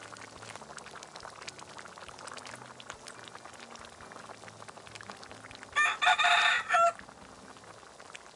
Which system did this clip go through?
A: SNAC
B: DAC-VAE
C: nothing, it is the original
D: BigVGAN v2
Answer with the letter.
C